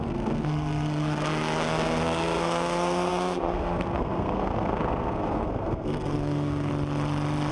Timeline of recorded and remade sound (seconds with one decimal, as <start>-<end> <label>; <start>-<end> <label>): 0.0-6.7 remade; 6.7-7.5 recorded